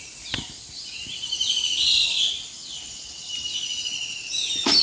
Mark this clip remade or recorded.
recorded